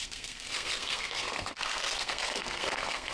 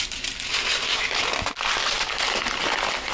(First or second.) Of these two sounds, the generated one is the first